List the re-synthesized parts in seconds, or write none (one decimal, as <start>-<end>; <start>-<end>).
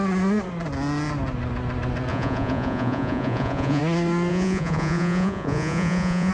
2.1-3.8; 4.3-6.3